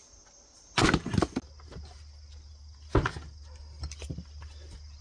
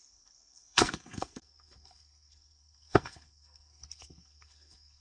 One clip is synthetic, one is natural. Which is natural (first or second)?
first